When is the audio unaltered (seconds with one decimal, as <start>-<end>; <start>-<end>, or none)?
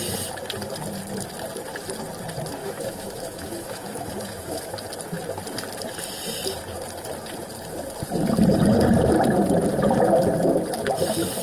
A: 0.0-2.6; 4.7-11.4